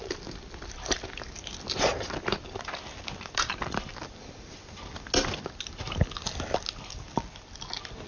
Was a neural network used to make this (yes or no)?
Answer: no